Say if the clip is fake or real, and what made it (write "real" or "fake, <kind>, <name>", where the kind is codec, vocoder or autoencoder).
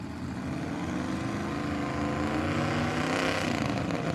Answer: real